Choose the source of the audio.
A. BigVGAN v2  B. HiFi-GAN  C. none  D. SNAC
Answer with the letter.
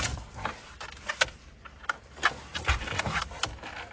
C